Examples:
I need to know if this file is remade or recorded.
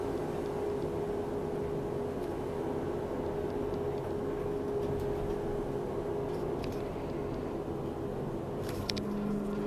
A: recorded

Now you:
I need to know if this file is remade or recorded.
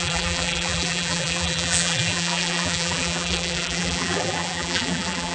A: remade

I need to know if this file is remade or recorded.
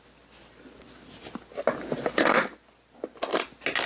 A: recorded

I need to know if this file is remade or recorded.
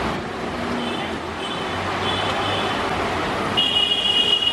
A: recorded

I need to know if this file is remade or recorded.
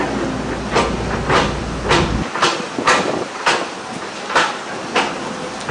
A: recorded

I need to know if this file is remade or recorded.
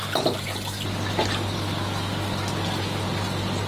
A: recorded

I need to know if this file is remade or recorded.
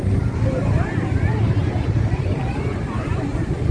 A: remade